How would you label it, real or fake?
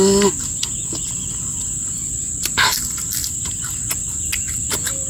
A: real